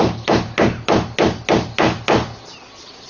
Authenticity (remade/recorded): recorded